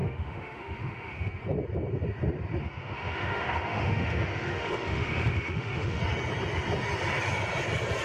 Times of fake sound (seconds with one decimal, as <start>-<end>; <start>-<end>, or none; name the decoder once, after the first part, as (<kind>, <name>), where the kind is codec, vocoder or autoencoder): 0.0-1.3 (autoencoder, DAC-VAE); 2.6-6.0